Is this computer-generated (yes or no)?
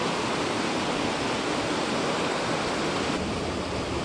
no